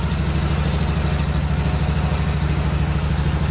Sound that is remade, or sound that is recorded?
recorded